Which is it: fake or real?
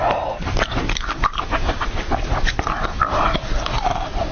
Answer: real